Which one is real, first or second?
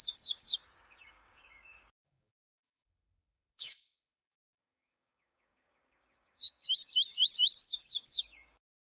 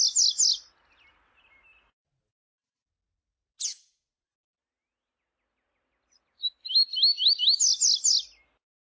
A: second